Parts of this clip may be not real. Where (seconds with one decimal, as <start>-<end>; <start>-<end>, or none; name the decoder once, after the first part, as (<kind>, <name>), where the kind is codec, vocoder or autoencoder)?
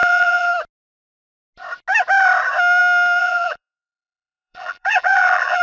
0.0-0.5 (vocoder, BigVGAN v2); 3.2-5.6